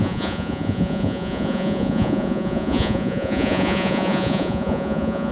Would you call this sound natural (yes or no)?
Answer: no